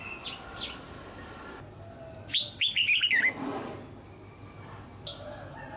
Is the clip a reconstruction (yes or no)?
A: no